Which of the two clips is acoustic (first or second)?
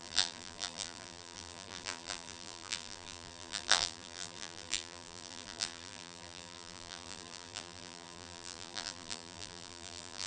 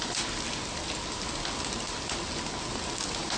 second